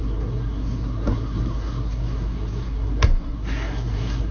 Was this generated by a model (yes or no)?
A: yes